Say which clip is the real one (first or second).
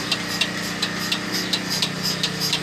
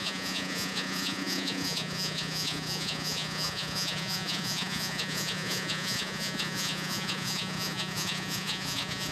first